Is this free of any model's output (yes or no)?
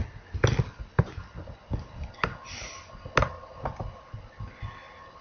yes